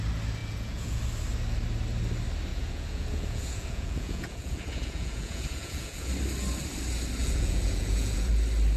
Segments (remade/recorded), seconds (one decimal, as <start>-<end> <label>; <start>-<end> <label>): 0.0-0.4 recorded; 0.4-1.0 remade; 1.0-2.5 recorded; 2.5-6.1 remade; 6.1-7.2 recorded; 7.2-8.3 remade; 8.3-8.8 recorded